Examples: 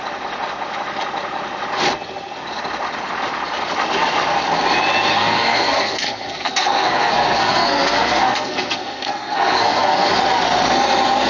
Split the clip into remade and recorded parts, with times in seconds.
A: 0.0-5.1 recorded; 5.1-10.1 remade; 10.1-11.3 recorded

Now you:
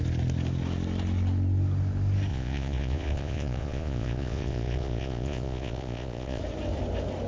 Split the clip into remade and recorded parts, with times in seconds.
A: 0.0-2.3 recorded; 2.3-6.4 remade; 6.4-7.3 recorded

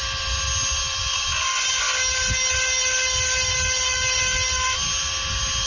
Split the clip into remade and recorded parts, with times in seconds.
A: 0.0-5.7 recorded

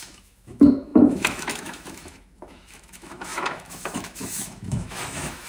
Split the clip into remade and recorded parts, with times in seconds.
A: 0.0-5.5 remade